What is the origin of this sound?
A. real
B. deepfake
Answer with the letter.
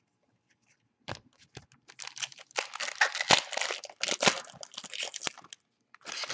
A